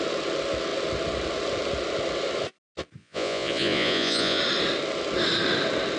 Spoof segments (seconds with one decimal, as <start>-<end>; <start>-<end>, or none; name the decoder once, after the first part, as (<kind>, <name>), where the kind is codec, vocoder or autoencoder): 3.0-4.4 (vocoder, Vocos)